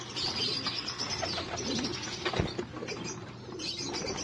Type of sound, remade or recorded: recorded